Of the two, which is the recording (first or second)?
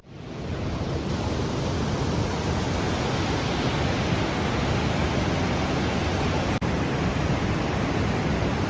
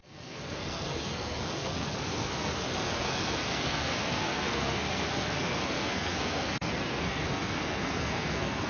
first